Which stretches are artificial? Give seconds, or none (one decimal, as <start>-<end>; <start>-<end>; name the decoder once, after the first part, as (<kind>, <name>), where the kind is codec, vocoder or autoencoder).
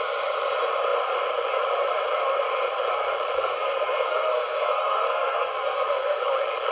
3.4-6.2 (codec, SNAC)